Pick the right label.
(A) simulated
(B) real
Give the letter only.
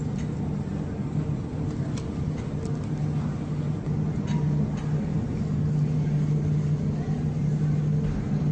B